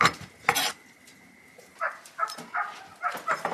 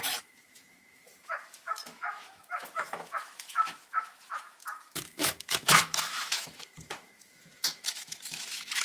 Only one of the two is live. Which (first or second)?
first